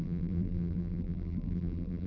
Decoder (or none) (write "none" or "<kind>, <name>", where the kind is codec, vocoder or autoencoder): vocoder, BigVGAN v2